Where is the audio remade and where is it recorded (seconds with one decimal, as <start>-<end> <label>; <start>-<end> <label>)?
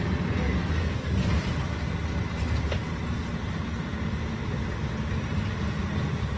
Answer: 0.0-6.4 recorded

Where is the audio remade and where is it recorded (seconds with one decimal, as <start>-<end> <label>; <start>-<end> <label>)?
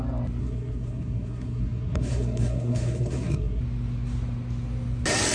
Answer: 0.0-0.4 recorded; 0.4-3.6 remade; 3.6-5.3 recorded